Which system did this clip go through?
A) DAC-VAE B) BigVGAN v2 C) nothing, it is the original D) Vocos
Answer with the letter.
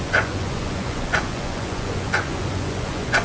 D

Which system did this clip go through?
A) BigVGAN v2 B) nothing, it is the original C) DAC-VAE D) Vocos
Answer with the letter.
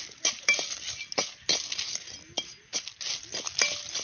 B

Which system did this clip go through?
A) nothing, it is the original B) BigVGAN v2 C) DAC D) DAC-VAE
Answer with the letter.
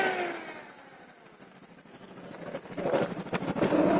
A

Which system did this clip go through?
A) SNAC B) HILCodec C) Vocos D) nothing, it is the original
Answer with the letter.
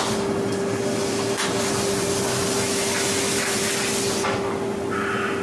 D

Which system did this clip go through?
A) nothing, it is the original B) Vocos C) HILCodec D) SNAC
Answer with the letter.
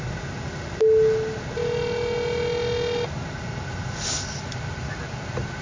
A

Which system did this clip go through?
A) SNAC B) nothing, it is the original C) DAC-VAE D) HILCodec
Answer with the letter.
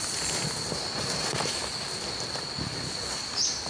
B